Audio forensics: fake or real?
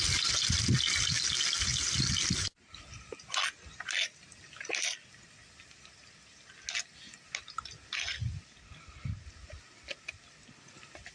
real